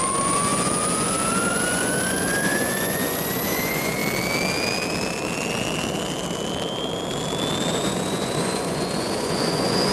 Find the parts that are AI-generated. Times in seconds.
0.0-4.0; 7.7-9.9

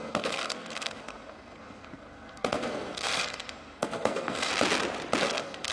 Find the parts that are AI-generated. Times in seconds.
0.0-4.5; 5.2-5.7

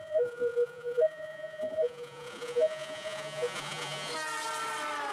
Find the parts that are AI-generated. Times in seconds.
0.0-4.1

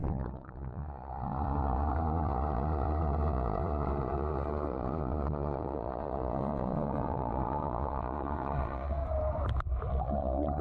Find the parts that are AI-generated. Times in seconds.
0.0-9.0; 9.9-10.6

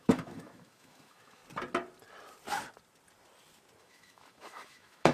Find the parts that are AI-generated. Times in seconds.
0.0-1.4; 3.8-5.1